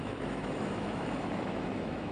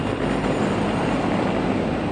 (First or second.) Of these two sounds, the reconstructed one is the first